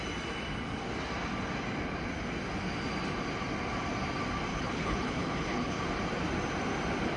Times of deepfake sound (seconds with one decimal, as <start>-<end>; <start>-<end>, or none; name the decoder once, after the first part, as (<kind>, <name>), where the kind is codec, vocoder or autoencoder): 4.5-5.8 (codec, HILCodec)